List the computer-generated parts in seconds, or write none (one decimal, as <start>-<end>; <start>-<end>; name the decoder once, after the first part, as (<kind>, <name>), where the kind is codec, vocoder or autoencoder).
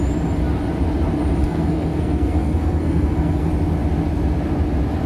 1.4-3.5 (codec, SNAC)